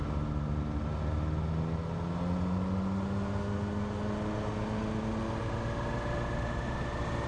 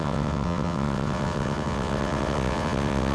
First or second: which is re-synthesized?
second